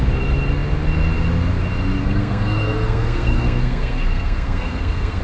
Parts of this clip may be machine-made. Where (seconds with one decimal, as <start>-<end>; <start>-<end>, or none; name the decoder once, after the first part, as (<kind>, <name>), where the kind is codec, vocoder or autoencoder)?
2.0-5.2 (codec, SNAC)